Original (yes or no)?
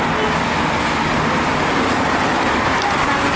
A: yes